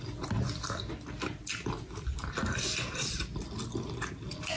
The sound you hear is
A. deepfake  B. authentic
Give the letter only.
B